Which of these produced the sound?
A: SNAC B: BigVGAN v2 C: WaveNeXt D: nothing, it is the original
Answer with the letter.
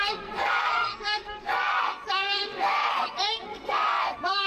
A